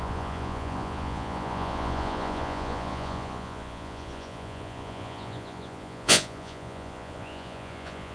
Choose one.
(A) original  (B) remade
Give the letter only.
B